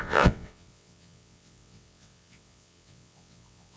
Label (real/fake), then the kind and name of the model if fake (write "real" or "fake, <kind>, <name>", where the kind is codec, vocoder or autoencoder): fake, vocoder, WaveNeXt